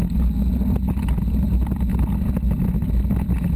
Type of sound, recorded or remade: recorded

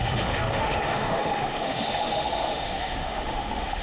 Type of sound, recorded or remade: remade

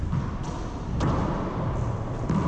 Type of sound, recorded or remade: recorded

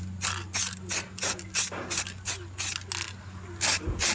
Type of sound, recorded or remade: recorded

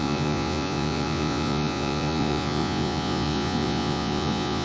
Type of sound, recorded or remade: remade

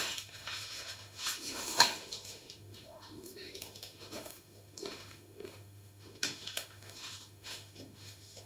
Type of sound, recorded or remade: remade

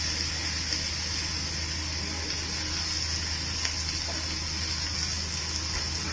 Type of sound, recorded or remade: recorded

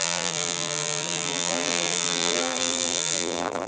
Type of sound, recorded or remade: remade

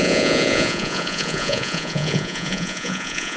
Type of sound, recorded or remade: remade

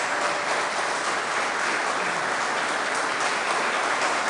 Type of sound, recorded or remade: recorded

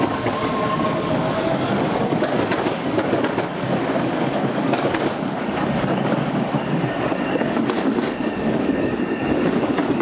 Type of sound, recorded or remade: remade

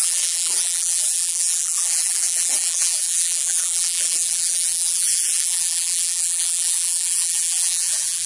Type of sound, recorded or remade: remade